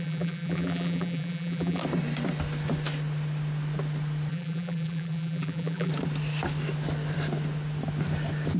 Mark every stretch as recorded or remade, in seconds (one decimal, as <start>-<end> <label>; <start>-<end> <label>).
0.0-1.8 remade; 1.8-4.3 recorded; 4.3-5.9 remade; 5.9-8.6 recorded

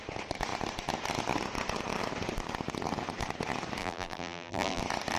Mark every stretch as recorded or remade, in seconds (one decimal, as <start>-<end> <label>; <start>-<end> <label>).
0.0-3.8 recorded; 3.8-4.8 remade; 4.8-5.2 recorded

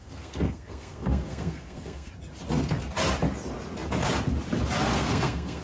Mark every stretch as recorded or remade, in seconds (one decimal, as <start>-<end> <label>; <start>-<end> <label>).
0.0-2.1 remade; 2.1-4.9 recorded; 4.9-5.6 remade

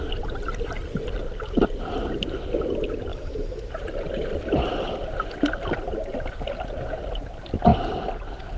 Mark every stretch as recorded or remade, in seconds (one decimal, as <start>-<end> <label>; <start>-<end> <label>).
0.0-3.1 recorded; 3.1-3.7 remade; 3.7-8.6 recorded

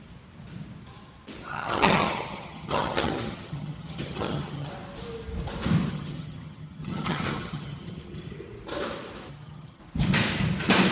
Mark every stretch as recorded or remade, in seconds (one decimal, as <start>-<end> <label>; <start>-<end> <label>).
0.0-1.5 recorded; 1.5-4.7 remade; 4.7-5.9 recorded; 5.9-8.4 remade; 8.4-9.3 recorded; 9.3-9.8 remade; 9.8-10.9 recorded

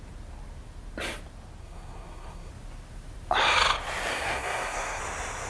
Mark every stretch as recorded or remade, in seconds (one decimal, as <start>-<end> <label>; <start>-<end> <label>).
0.0-1.6 recorded; 1.6-2.5 remade; 2.5-4.1 recorded; 4.1-5.0 remade; 5.0-5.5 recorded

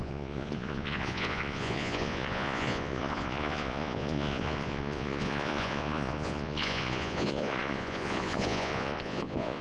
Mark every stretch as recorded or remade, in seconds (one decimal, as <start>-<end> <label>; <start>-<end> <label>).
0.0-9.6 remade